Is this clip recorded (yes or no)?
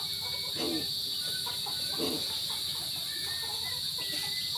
yes